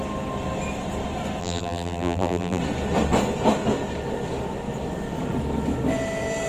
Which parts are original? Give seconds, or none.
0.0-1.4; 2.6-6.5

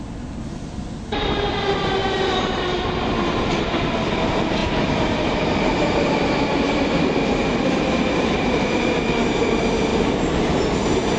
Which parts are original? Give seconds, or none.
0.0-2.0; 2.6-4.6; 9.1-9.9; 10.7-11.2

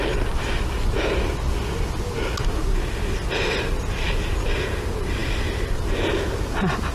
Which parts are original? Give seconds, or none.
0.0-6.9

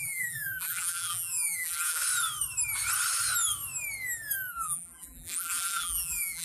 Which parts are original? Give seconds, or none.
2.0-4.5

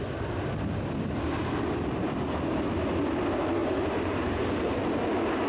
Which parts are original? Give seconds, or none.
0.0-3.6; 4.8-5.5

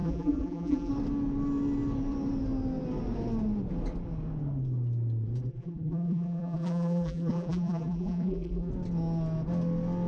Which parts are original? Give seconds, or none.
0.9-5.5; 8.7-10.1

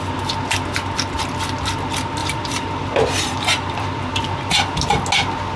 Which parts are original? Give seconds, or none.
0.0-2.2; 4.5-5.6